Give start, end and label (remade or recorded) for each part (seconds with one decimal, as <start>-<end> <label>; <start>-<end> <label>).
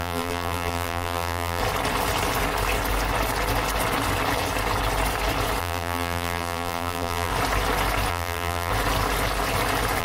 0.0-1.6 remade; 1.6-5.6 recorded; 5.6-7.3 remade; 7.3-8.1 recorded; 8.1-8.7 remade; 8.7-10.0 recorded